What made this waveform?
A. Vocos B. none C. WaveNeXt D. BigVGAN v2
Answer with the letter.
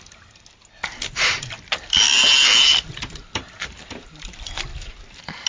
B